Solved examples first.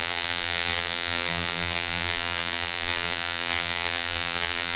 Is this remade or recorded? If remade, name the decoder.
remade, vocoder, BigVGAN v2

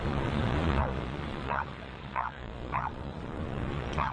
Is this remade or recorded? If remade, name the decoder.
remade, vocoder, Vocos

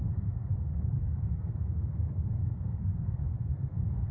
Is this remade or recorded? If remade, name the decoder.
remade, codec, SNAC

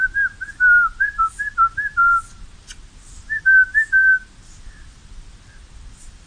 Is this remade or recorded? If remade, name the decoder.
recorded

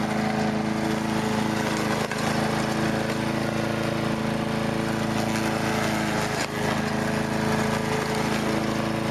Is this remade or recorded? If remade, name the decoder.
recorded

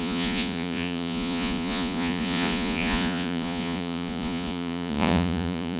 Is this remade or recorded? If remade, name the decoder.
remade, vocoder, Vocos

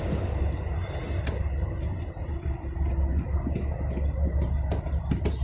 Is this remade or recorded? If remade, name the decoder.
recorded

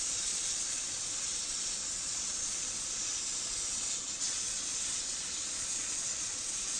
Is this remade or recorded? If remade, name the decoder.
remade, vocoder, Vocos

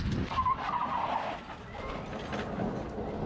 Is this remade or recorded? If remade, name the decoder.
recorded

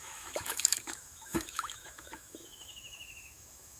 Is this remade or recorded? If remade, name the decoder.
remade, autoencoder, DAC-VAE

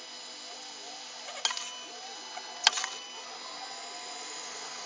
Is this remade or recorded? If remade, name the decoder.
recorded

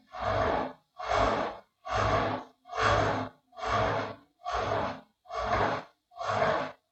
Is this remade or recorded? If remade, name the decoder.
recorded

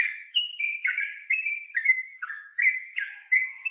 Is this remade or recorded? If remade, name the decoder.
remade, codec, DAC